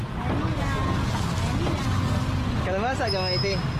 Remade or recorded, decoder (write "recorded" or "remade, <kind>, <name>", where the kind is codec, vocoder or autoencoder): recorded